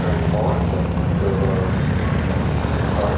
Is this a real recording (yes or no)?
yes